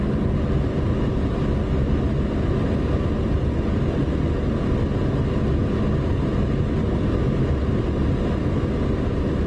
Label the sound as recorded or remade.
recorded